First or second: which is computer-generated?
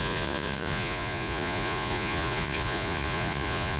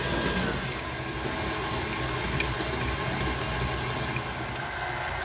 first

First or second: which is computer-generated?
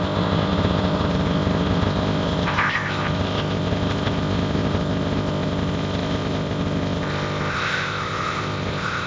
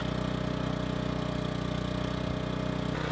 first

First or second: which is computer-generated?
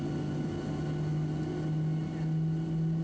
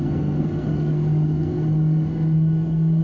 second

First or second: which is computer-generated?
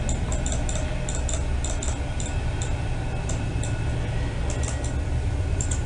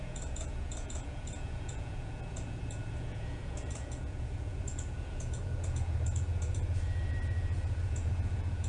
second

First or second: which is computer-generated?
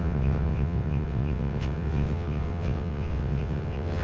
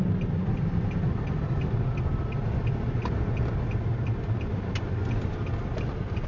first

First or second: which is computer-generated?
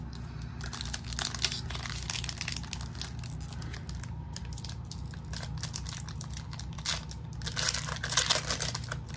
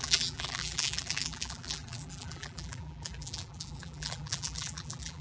second